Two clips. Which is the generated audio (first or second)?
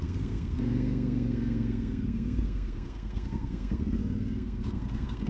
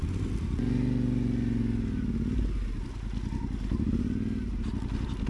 first